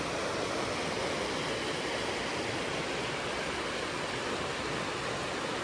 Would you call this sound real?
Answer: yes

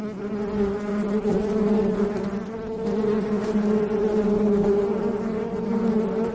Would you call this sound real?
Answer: yes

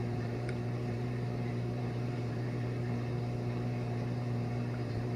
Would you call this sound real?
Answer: no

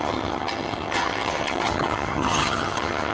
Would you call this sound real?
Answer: no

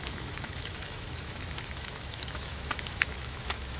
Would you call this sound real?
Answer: no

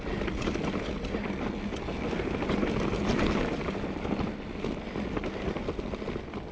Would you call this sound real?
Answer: yes